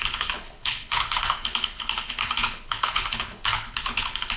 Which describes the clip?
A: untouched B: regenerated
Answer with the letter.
B